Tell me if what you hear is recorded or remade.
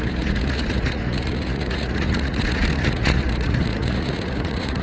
remade